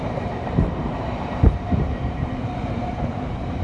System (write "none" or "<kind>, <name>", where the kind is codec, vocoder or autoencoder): vocoder, BigVGAN v2